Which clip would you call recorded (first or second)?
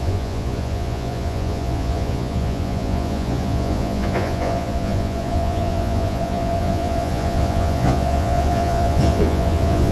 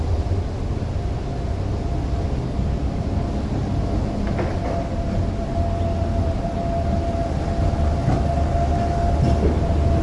second